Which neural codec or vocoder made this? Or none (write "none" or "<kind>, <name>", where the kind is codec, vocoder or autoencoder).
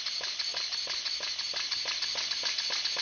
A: none